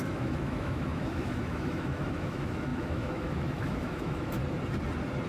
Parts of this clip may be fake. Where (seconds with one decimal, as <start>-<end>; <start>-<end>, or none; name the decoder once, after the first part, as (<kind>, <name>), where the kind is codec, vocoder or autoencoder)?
0.0-4.4 (autoencoder, DAC-VAE)